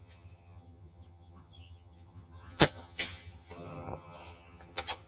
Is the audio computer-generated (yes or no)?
yes